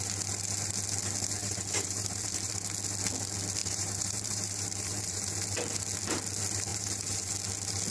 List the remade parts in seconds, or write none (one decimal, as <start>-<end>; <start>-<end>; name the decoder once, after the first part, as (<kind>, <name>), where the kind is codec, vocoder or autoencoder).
1.4-2.5 (vocoder, BigVGAN v2); 3.6-5.3; 6.7-7.3